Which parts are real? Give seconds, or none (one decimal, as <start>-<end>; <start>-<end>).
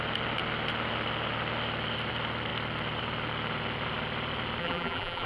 0.0-4.6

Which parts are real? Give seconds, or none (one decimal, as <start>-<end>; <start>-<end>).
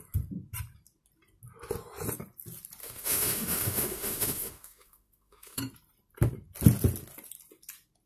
0.0-2.8; 5.6-8.1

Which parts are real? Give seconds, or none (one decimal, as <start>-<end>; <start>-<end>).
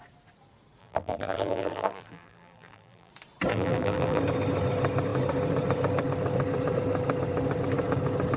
0.0-0.8; 3.1-3.5; 4.2-8.4